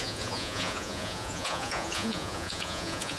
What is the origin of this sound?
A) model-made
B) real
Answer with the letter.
A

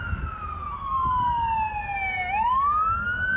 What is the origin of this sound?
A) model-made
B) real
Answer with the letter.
B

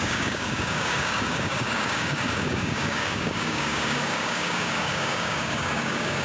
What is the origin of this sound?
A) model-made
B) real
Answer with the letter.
A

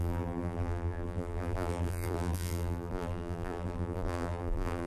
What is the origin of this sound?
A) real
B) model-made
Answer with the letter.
B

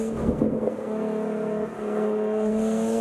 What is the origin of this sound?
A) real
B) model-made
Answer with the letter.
B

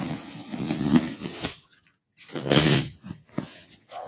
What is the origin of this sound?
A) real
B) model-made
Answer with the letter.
B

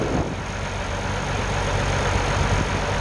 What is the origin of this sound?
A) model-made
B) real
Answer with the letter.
B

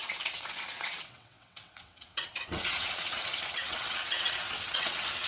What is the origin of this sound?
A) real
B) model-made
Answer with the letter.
B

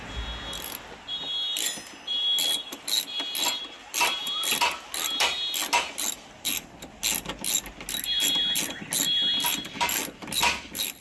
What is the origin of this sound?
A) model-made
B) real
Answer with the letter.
B